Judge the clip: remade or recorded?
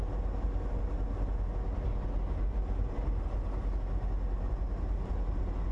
recorded